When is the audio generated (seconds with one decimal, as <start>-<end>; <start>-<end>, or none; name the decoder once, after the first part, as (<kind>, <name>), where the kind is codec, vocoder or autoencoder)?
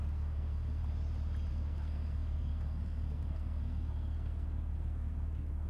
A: 0.0-0.8 (codec, SNAC); 1.5-5.7